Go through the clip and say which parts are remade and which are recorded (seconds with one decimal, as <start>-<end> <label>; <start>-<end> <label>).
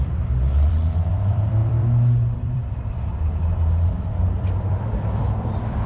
0.0-5.9 remade